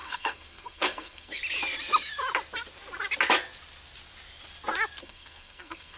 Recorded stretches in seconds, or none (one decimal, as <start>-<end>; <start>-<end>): 1.4-5.0